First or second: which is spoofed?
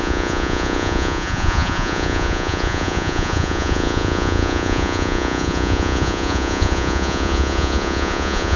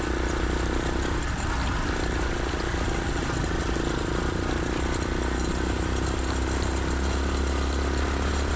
first